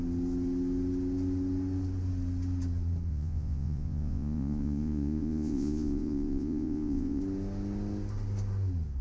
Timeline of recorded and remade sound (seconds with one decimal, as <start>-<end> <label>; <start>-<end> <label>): 0.0-3.1 recorded; 3.1-7.2 remade; 7.2-9.0 recorded